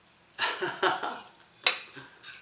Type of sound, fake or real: real